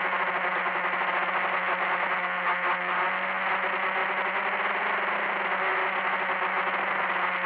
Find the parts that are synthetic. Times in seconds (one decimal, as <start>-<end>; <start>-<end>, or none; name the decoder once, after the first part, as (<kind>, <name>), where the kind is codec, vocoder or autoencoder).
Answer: none